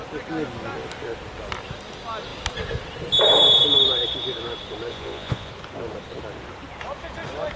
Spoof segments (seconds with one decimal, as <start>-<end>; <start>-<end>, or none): 4.9-5.5